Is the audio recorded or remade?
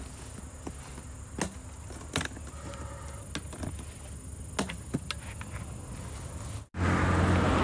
recorded